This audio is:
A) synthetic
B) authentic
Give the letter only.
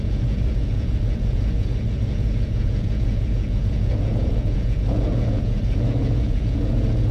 A